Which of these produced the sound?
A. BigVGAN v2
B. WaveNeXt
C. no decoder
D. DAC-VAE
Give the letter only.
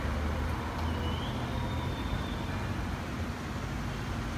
C